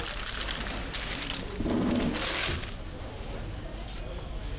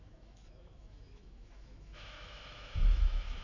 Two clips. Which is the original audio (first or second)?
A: first